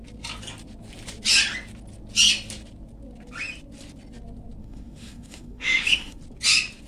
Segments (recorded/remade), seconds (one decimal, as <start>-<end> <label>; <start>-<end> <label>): 0.0-4.6 recorded; 4.6-6.2 remade; 6.2-6.9 recorded

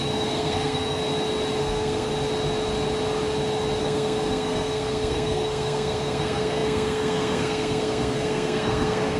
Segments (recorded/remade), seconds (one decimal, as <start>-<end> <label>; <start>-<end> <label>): 0.0-1.0 remade; 1.0-1.6 recorded; 1.6-2.1 remade; 2.1-3.8 recorded; 3.8-9.2 remade